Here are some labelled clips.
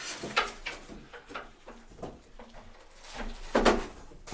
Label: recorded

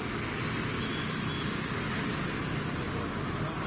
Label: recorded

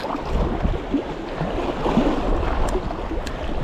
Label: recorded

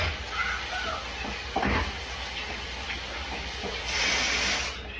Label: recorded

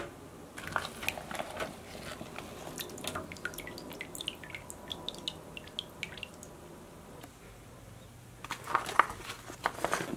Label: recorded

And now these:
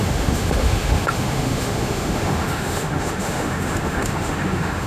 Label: remade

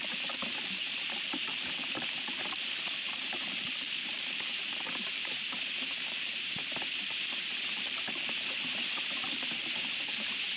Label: remade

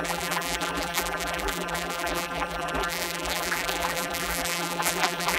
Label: remade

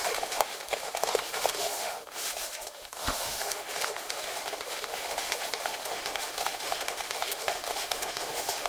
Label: remade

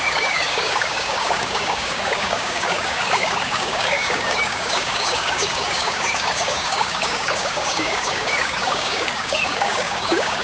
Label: remade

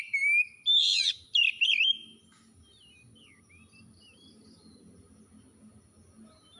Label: recorded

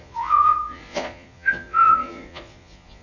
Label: remade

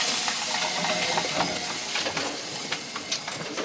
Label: recorded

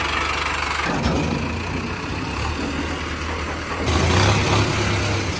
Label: recorded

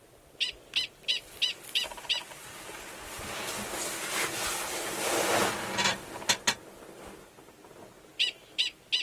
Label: recorded